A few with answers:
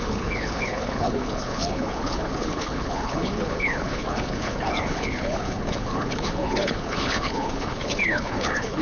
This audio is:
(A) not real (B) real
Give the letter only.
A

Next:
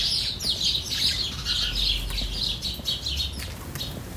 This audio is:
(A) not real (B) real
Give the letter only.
B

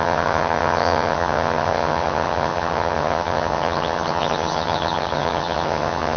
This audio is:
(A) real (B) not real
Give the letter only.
B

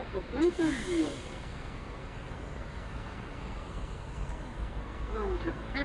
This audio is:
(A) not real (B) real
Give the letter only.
A